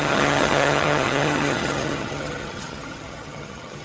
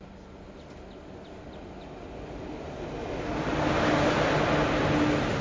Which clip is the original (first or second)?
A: second